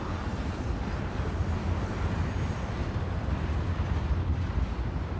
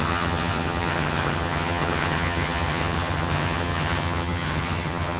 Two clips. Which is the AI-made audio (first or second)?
second